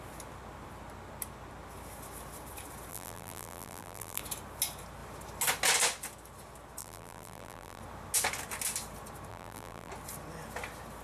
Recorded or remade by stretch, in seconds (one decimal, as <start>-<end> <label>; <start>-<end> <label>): 0.0-2.9 recorded; 2.9-4.2 remade; 4.2-6.8 recorded; 6.8-7.8 remade; 7.8-9.3 recorded; 9.3-9.9 remade; 9.9-11.0 recorded